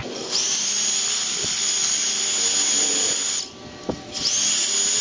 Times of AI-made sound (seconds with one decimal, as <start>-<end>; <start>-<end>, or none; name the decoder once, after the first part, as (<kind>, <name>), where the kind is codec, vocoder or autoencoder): none